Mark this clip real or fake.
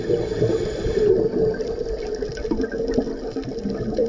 real